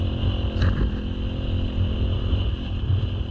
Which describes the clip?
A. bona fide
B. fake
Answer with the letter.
A